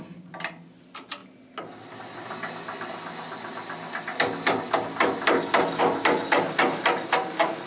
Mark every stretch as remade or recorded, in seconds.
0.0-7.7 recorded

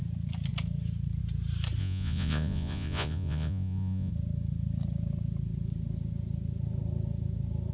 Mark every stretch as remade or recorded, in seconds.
0.0-1.8 recorded; 1.8-4.1 remade; 4.1-7.7 recorded

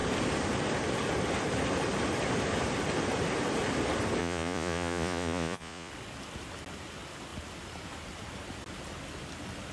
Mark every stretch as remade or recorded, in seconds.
0.0-4.2 recorded; 4.2-5.9 remade; 5.9-9.7 recorded

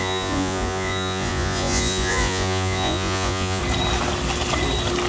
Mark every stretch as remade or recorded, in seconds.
0.0-3.6 remade; 3.6-5.1 recorded

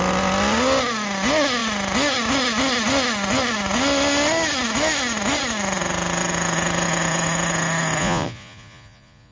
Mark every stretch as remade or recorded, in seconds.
0.0-8.0 recorded; 8.0-9.3 remade

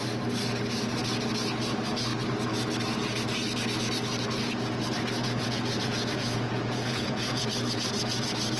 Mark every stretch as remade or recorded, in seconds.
0.0-5.2 recorded; 5.2-7.4 remade; 7.4-8.6 recorded

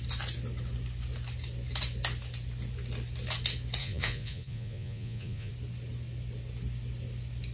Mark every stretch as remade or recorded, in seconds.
0.0-3.8 recorded; 3.8-5.5 remade; 5.5-7.5 recorded

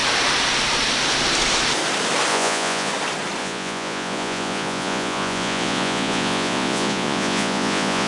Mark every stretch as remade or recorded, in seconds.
0.0-2.3 recorded; 2.3-2.9 remade; 2.9-3.4 recorded; 3.4-8.1 remade